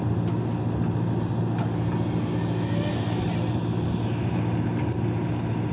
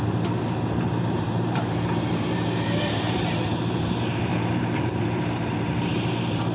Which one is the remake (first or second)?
second